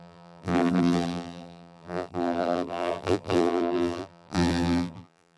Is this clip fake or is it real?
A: fake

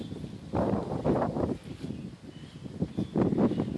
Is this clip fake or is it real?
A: real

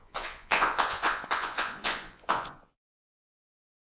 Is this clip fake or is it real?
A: fake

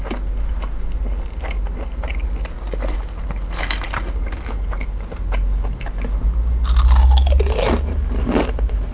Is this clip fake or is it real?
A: real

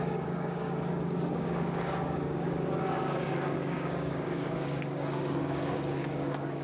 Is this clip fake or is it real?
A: fake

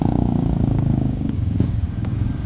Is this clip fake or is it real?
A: fake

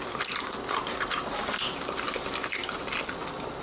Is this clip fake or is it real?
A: real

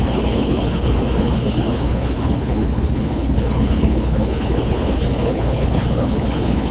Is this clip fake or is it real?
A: fake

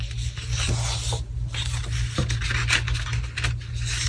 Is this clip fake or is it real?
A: real